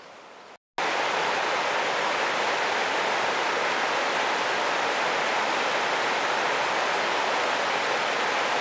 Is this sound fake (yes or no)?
no